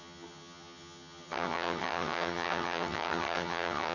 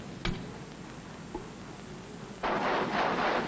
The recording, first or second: second